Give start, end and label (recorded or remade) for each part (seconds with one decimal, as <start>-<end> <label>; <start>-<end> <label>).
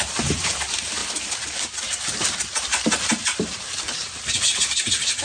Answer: 0.0-5.2 recorded